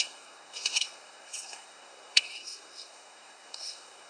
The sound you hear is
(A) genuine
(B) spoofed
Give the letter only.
B